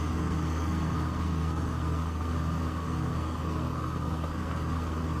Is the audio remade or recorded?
remade